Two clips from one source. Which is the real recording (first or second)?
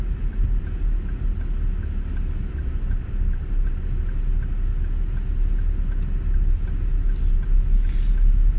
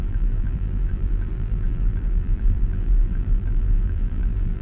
first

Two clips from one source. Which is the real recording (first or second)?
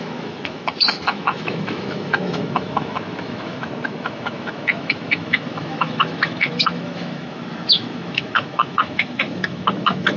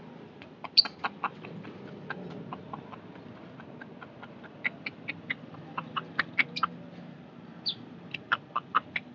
second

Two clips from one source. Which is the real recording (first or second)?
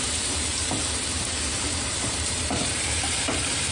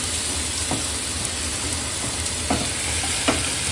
second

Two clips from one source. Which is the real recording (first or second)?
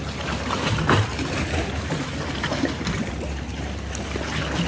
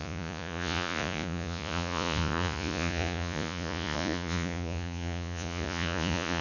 first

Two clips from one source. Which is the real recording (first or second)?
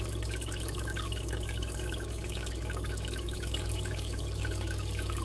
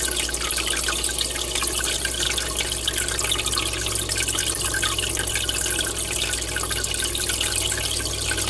second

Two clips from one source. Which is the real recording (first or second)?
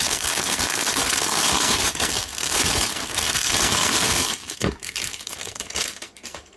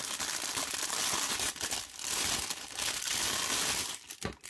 second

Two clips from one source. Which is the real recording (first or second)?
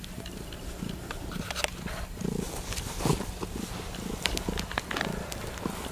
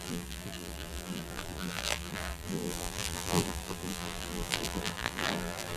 first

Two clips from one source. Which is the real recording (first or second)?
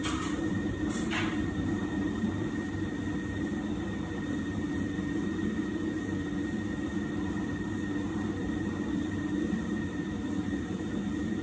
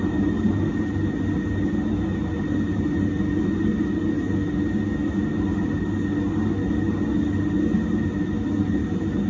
second